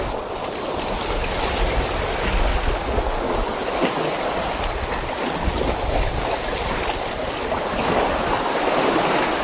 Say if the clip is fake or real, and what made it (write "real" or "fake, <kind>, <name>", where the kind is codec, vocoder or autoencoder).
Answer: real